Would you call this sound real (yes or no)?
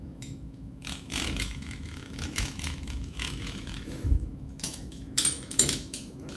no